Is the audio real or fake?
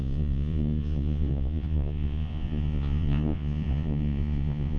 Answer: fake